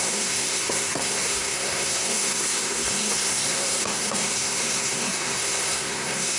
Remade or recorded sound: remade